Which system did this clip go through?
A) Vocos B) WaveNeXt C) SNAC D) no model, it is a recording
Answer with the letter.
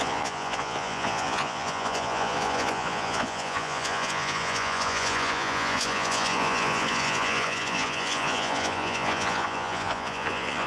A